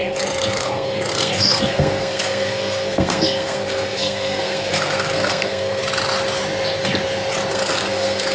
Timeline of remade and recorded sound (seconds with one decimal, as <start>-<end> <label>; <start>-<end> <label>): 0.0-5.8 remade; 5.8-7.5 recorded; 7.5-8.3 remade